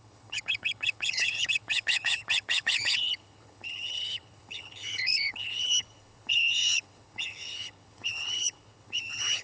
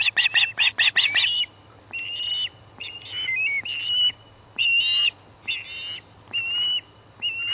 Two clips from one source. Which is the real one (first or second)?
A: second